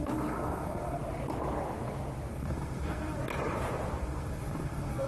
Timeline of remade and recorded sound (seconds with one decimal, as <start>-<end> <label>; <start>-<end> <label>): 0.0-1.0 remade; 1.0-2.3 recorded; 2.3-3.2 remade; 3.2-4.0 recorded; 4.0-5.1 remade